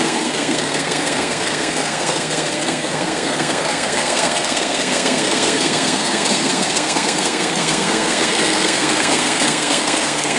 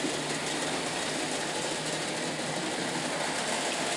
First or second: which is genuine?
second